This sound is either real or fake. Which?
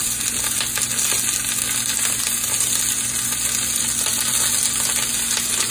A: real